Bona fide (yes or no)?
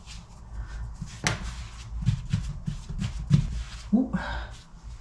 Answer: yes